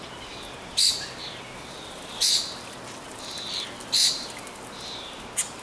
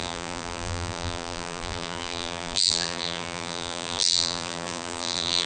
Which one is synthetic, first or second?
second